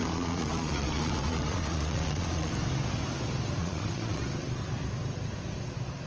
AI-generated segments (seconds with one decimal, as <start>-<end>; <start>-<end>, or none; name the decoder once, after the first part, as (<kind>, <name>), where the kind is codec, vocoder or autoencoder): 0.0-2.5 (vocoder, Vocos); 3.6-4.2